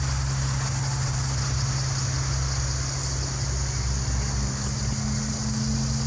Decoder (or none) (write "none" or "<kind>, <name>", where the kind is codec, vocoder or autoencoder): none